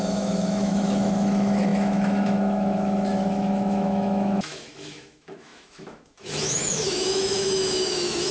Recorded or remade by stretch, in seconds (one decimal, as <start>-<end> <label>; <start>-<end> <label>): 0.0-8.3 remade